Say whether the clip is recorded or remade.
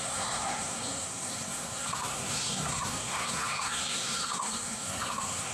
remade